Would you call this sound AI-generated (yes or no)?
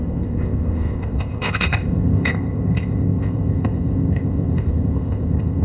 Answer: yes